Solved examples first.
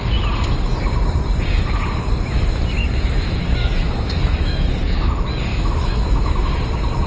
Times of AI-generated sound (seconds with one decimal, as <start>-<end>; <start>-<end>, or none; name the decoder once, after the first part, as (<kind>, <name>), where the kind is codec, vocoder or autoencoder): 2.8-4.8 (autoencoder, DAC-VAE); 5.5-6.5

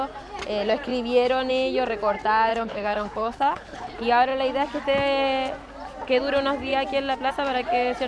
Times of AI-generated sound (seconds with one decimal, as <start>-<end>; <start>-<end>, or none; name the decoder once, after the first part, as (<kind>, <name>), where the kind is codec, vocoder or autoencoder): 2.5-3.9 (codec, HILCodec)

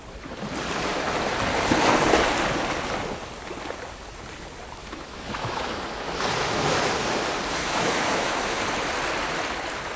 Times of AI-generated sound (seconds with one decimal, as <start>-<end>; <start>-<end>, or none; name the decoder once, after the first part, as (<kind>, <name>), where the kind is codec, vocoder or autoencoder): 4.8-5.8 (autoencoder, DAC-VAE); 7.6-8.6